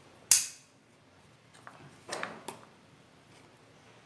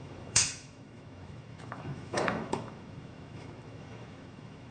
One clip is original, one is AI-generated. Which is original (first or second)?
first